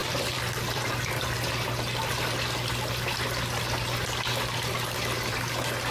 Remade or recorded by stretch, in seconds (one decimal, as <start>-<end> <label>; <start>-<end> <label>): 0.0-1.2 remade; 1.2-5.9 recorded